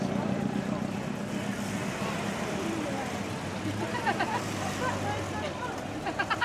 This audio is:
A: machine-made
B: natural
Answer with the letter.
B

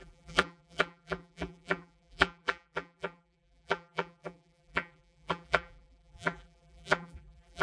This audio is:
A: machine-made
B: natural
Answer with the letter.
A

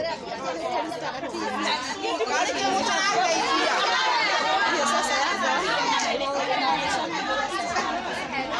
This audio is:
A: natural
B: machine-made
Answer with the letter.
A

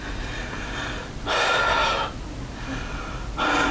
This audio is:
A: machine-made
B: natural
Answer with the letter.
B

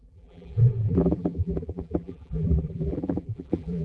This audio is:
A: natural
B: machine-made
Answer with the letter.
B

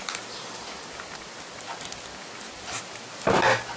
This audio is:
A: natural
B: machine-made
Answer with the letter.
A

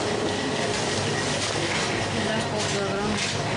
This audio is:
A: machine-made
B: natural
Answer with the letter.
B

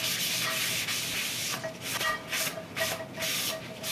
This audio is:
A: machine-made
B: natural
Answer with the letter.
B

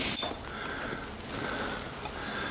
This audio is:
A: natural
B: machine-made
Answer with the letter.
A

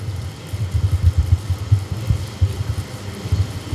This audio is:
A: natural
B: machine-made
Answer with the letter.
A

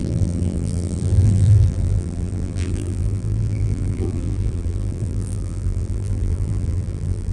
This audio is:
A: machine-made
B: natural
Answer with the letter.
A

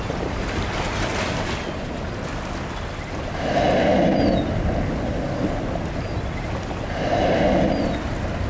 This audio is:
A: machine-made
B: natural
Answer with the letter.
B